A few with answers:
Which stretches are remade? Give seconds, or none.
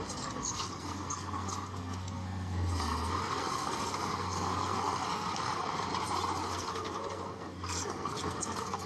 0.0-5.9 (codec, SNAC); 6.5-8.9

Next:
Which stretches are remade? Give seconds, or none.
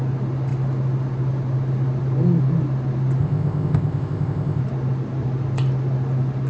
3.2-4.6 (codec, ZipCodec)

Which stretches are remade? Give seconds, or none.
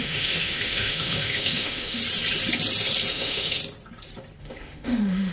0.0-2.0 (autoencoder, DAC-VAE); 3.1-3.6; 4.4-5.3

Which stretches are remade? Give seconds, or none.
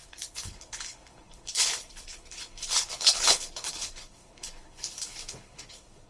0.0-6.1 (codec, HILCodec)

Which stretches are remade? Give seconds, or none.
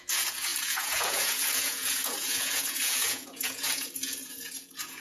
0.0-5.0 (vocoder, Vocos)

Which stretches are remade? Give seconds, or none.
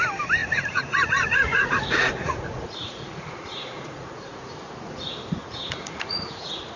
0.4-4.5 (vocoder, Vocos); 5.4-6.8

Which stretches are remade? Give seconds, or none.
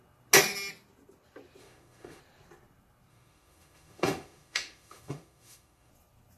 1.6-2.2 (autoencoder, DAC-VAE); 3.1-5.9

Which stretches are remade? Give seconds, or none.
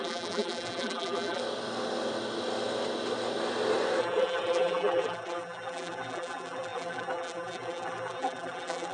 0.0-1.4 (vocoder, BigVGAN v2); 4.0-8.9